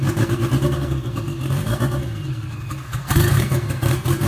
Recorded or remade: remade